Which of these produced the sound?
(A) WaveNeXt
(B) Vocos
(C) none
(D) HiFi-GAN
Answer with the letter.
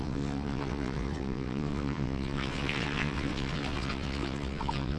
A